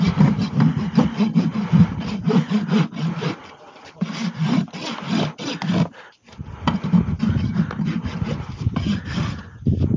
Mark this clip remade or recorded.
recorded